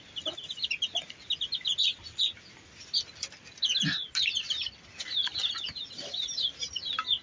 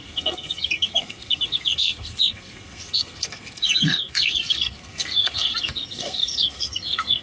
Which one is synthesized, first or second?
second